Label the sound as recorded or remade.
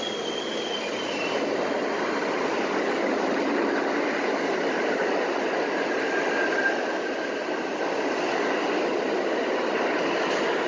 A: recorded